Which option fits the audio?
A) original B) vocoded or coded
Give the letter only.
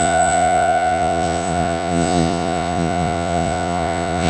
B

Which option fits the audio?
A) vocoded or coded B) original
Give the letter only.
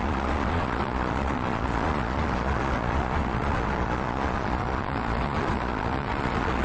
A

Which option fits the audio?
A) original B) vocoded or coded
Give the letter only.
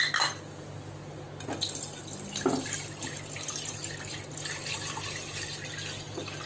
A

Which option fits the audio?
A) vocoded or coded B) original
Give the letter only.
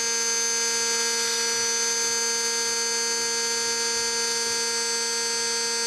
B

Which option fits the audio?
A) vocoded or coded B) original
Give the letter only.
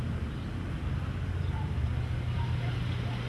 B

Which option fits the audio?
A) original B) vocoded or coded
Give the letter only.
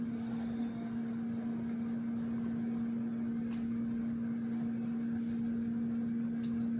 A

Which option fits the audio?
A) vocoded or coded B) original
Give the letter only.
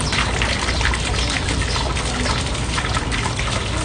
B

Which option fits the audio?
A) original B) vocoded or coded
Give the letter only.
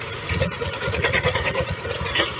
B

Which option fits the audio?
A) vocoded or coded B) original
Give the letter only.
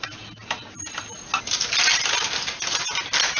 B